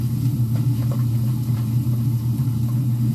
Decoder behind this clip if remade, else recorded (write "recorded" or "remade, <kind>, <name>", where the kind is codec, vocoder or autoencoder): remade, vocoder, BigVGAN v2